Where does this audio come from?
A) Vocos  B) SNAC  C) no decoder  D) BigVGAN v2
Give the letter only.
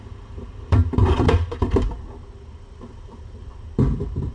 D